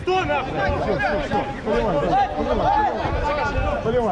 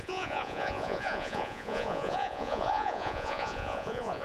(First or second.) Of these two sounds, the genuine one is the first